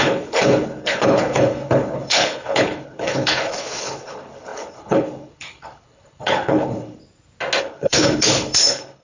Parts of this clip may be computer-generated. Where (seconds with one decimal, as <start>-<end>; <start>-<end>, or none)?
0.0-7.0; 7.6-9.0

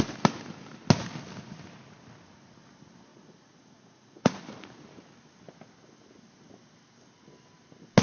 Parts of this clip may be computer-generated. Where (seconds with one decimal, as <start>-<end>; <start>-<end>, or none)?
3.1-4.4

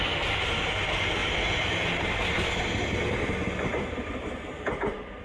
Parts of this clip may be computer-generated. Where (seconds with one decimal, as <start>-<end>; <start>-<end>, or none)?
none

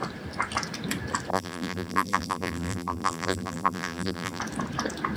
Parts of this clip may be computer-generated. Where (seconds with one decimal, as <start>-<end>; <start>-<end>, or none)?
1.3-4.4

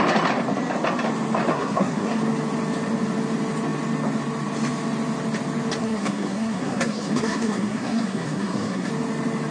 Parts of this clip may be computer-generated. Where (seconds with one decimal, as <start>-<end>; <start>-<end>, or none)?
1.5-2.2; 5.8-8.9

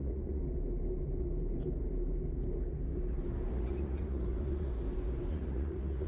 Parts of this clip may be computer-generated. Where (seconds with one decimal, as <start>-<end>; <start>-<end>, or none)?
0.0-0.4; 3.5-4.7; 5.3-6.1

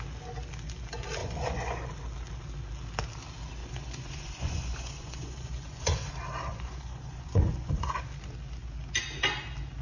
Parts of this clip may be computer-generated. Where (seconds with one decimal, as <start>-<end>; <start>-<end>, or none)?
1.2-1.9; 3.6-6.1; 6.5-8.0